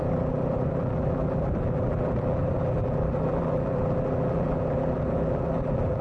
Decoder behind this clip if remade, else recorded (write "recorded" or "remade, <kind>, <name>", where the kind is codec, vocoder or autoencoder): remade, vocoder, BigVGAN v2